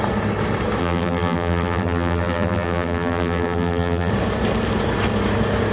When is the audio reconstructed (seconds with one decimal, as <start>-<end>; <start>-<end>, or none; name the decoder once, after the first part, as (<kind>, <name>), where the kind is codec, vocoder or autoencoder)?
0.8-4.1 (vocoder, BigVGAN v2)